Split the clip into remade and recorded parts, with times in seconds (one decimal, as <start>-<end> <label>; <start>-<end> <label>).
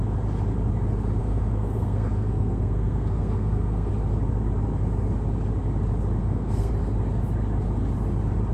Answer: 0.0-1.2 recorded; 1.2-3.9 remade; 3.9-6.2 recorded; 6.2-6.7 remade; 6.7-8.5 recorded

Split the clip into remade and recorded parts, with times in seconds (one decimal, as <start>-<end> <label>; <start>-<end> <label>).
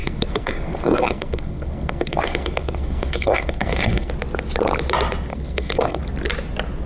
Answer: 0.0-4.1 remade; 4.1-5.3 recorded; 5.3-6.0 remade; 6.0-6.9 recorded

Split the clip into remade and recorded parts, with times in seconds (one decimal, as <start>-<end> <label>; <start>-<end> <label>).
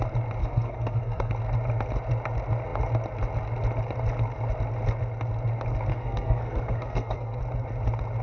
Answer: 0.0-0.4 recorded; 0.4-1.3 remade; 1.3-5.9 recorded; 5.9-7.4 remade; 7.4-8.2 recorded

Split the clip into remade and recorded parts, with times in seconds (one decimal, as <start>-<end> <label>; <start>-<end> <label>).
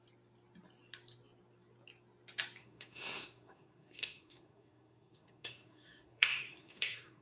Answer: 0.0-2.6 recorded; 2.6-7.2 remade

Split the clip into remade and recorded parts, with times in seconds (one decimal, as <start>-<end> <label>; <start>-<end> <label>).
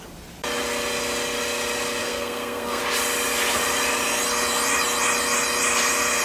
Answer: 0.0-2.0 recorded; 2.0-2.8 remade; 2.8-6.2 recorded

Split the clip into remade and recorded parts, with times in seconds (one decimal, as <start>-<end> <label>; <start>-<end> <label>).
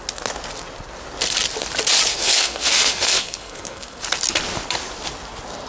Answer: 0.0-2.1 recorded; 2.1-4.0 remade; 4.0-5.7 recorded